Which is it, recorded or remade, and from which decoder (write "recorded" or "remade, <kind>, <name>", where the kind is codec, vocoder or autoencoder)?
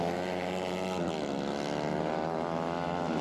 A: recorded